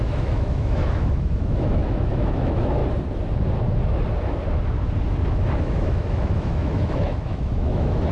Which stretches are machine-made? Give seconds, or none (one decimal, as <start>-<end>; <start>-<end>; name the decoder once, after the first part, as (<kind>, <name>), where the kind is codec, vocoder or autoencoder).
0.0-2.8 (autoencoder, DAC-VAE); 5.6-8.1